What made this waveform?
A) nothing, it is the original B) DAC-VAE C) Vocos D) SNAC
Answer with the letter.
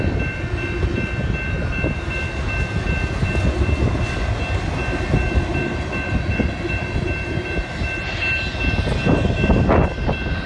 A